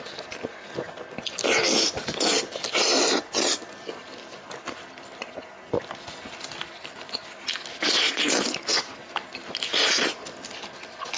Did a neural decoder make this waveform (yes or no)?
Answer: no